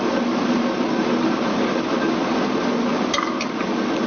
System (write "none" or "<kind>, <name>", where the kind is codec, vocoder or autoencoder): none